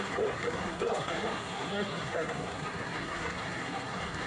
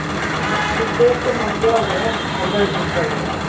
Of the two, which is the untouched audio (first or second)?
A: second